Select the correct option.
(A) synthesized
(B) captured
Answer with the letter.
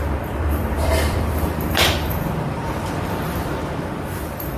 A